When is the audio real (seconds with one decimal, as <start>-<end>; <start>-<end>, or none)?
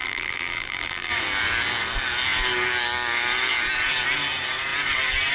1.1-5.3